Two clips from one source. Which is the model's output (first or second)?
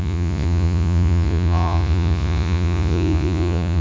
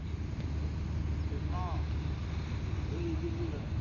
first